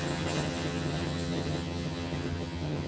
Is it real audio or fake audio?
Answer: fake